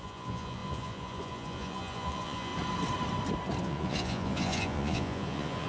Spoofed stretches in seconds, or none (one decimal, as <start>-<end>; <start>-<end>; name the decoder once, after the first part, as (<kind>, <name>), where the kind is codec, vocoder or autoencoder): 0.0-2.5 (vocoder, Vocos); 3.6-5.7